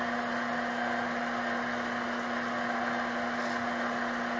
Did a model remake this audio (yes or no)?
no